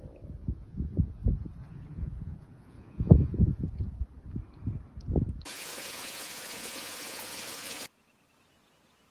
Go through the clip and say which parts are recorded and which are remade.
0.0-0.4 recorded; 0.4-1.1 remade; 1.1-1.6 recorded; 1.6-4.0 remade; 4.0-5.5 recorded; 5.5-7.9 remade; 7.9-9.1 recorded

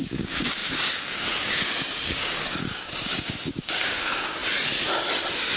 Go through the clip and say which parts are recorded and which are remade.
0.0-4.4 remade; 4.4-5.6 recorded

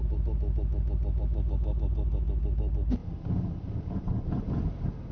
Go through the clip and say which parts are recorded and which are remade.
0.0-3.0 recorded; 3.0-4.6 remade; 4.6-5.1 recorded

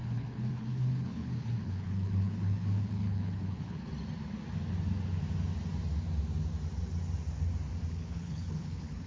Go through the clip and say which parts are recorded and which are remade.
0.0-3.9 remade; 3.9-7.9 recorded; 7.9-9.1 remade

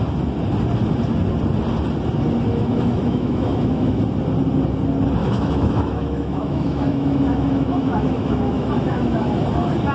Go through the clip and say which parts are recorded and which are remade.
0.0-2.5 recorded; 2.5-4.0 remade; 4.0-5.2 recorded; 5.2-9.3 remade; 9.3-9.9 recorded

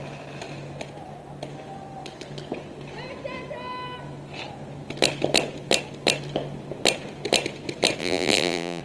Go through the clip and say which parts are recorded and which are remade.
0.0-8.0 recorded; 8.0-8.8 remade

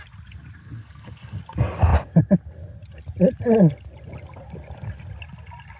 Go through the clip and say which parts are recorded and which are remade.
0.0-0.6 recorded; 0.6-1.4 remade; 1.4-5.8 recorded

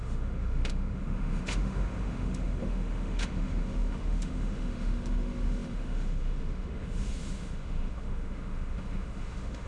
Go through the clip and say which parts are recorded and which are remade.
0.0-9.7 remade